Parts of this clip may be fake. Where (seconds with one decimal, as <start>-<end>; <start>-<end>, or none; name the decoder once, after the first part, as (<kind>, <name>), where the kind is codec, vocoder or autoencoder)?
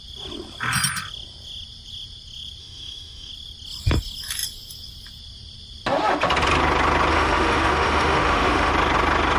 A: 2.6-3.3 (autoencoder, DAC-VAE); 7.1-8.7